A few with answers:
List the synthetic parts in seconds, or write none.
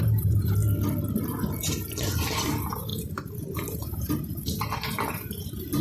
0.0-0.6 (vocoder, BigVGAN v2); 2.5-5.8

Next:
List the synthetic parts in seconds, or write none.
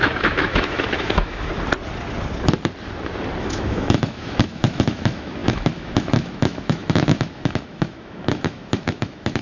0.0-1.5 (autoencoder, DAC-VAE); 3.4-9.4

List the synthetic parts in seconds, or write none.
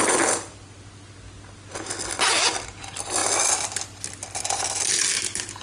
none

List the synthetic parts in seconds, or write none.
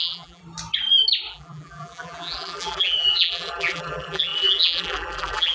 0.0-0.4 (vocoder, BigVGAN v2); 1.3-5.5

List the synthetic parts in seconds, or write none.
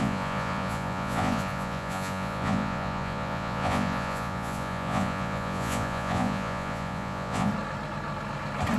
0.0-7.5 (vocoder, Vocos)